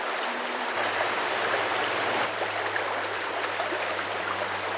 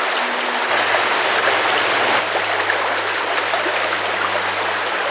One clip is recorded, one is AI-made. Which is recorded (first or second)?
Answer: second